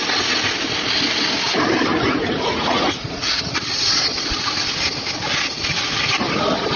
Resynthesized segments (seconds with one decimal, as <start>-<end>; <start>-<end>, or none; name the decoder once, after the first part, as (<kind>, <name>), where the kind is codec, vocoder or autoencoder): 1.9-3.4 (vocoder, Vocos)